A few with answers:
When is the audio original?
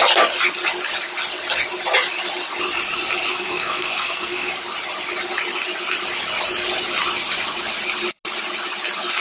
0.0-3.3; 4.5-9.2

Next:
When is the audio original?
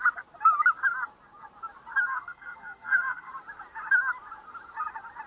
0.0-2.1; 3.3-5.3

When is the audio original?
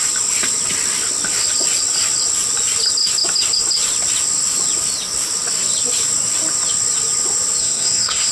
0.0-7.6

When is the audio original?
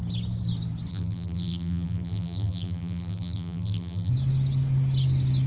0.0-0.9; 4.1-5.5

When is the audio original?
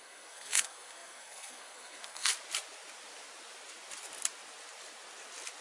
2.3-5.6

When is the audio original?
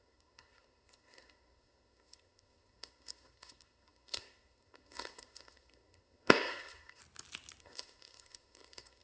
7.0-7.6